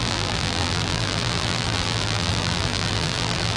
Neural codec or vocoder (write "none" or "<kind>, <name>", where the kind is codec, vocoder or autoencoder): vocoder, BigVGAN v2